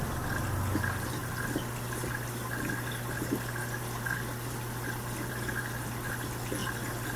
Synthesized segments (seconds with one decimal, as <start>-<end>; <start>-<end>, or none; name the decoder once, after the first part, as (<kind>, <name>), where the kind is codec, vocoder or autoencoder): none